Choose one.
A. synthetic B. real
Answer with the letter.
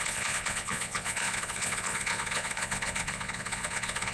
A